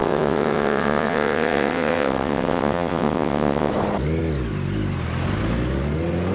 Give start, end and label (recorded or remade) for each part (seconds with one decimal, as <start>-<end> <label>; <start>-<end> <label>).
0.0-3.7 remade; 3.7-6.3 recorded